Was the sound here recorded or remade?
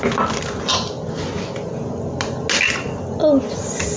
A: recorded